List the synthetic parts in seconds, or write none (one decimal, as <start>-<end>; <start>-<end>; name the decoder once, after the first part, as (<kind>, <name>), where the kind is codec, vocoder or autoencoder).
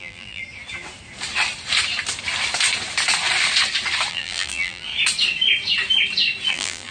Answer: 0.0-0.4 (vocoder, BigVGAN v2); 4.1-4.9; 6.5-6.9